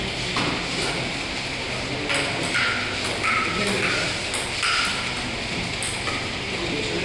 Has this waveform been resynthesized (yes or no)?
no